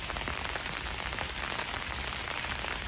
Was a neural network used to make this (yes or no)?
no